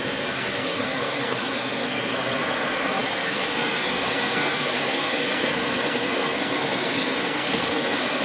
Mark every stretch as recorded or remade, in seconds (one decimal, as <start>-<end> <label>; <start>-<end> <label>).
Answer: 0.0-8.2 remade